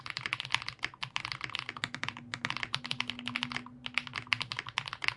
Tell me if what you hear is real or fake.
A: real